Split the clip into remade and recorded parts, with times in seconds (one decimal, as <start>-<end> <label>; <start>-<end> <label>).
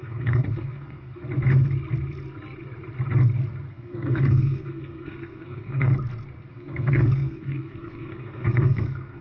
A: 0.0-1.1 remade; 1.1-3.7 recorded; 3.7-5.9 remade; 5.9-6.5 recorded; 6.5-9.2 remade